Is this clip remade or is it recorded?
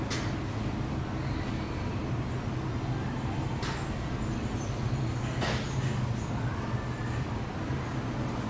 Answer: recorded